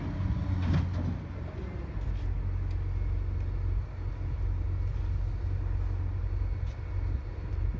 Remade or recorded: recorded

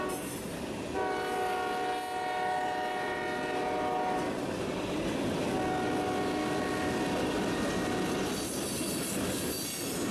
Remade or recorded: recorded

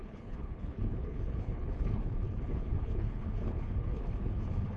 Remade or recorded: remade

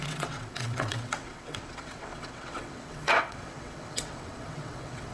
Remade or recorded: remade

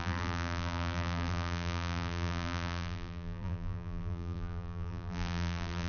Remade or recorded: remade